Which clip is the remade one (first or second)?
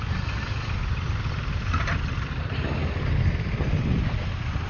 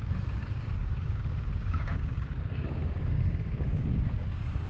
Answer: second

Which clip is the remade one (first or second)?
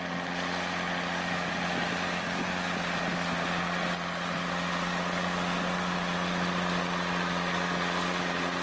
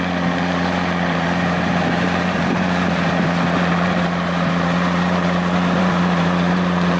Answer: second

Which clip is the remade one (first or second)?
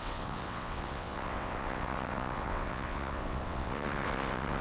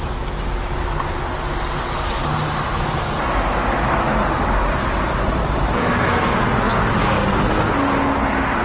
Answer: first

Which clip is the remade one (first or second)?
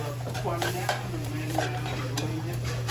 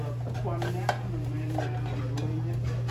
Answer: first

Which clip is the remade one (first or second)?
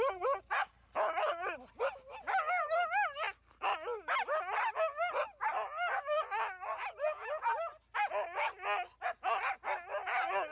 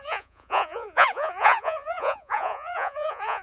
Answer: second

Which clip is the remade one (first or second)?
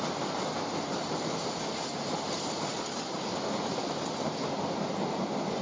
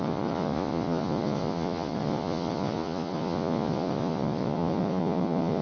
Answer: second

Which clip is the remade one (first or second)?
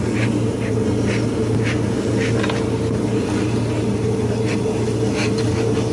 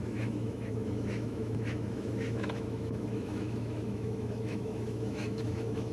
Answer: second